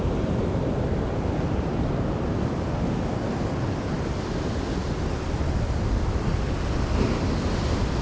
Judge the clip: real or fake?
real